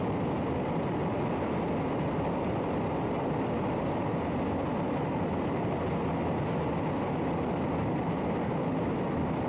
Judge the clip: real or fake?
real